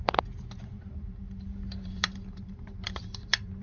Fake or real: fake